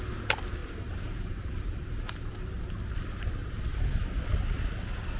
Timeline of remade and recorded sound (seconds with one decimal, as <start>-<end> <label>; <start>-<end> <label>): 0.0-0.6 recorded; 0.6-2.7 remade; 2.7-3.4 recorded; 3.4-4.2 remade; 4.2-5.2 recorded